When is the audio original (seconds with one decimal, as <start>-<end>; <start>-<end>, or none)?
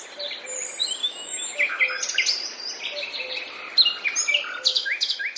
0.0-1.0; 1.8-4.7